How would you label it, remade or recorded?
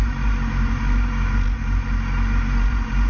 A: remade